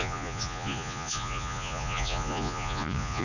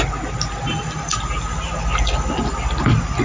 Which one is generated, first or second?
first